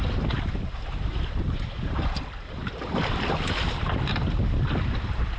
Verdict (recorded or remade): remade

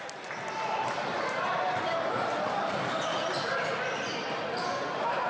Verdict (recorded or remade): recorded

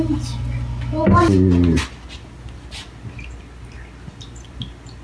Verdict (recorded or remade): recorded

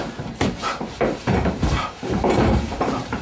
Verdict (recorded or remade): remade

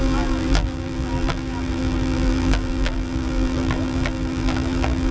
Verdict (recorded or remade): remade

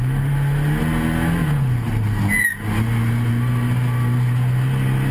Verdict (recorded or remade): recorded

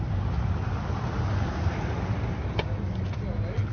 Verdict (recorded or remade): recorded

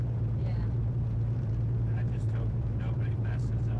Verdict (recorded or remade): remade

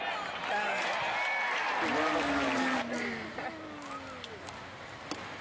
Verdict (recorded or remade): recorded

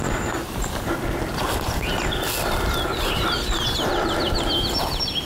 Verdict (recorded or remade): recorded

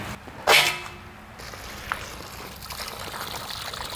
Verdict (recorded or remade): recorded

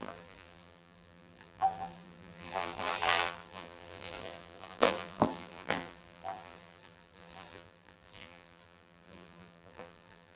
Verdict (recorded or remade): remade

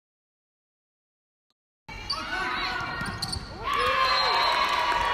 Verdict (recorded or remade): recorded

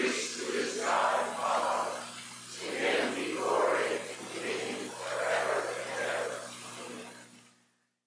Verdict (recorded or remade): recorded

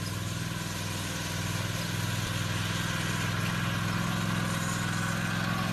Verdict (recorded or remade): recorded